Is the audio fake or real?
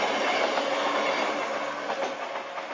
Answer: real